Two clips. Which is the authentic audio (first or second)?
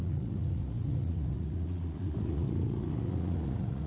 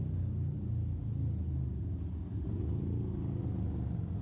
second